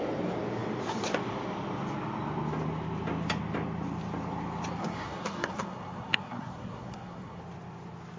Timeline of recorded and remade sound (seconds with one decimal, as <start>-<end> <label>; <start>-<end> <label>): 0.0-4.8 recorded; 4.8-7.4 remade; 7.4-8.2 recorded